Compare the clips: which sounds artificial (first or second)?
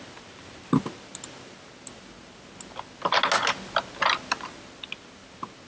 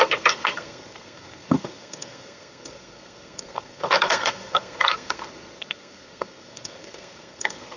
second